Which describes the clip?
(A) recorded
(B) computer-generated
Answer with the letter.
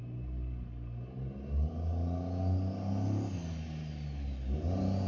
A